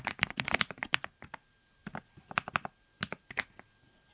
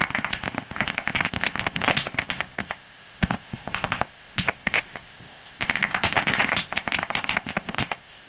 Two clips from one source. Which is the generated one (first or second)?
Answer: second